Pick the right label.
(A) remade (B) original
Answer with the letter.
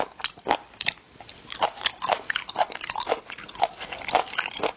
B